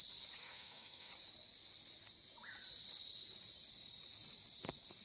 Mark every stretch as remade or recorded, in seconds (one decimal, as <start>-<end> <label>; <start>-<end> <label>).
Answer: 0.0-0.4 recorded; 0.4-1.1 remade; 1.1-5.0 recorded